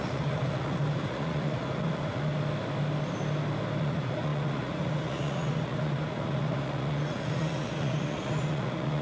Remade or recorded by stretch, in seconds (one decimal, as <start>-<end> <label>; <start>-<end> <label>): 0.0-2.3 remade; 2.3-3.8 recorded; 3.8-9.0 remade

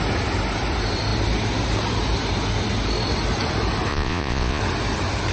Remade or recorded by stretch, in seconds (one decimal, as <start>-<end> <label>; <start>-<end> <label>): 0.0-3.9 recorded; 3.9-4.6 remade; 4.6-5.3 recorded

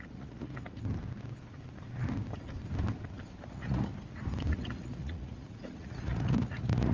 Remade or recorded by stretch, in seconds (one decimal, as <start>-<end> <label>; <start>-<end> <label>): 0.0-0.9 remade; 0.9-3.4 recorded; 3.4-3.9 remade; 3.9-4.5 recorded; 4.5-6.9 remade

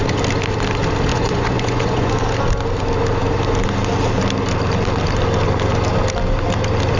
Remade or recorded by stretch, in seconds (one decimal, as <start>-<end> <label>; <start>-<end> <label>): 0.0-1.1 recorded; 1.1-2.1 remade; 2.1-7.0 recorded

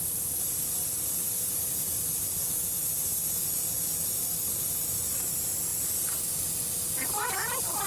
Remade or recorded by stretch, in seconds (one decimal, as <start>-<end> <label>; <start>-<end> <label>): 0.0-7.9 recorded

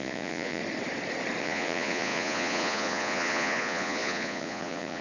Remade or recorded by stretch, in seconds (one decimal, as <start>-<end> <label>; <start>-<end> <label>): 0.0-0.6 remade; 0.6-1.4 recorded; 1.4-5.0 remade

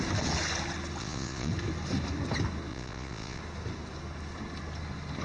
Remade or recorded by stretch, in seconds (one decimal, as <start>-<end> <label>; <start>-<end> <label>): 0.0-1.0 recorded; 1.0-1.5 remade; 1.5-2.7 recorded; 2.7-3.4 remade; 3.4-5.2 recorded